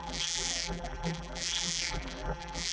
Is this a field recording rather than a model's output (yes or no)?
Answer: no